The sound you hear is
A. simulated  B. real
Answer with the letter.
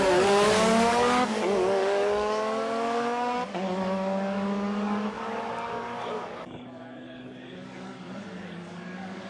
A